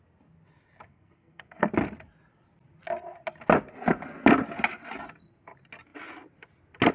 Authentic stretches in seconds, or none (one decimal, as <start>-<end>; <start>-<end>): 0.0-0.9; 1.7-6.9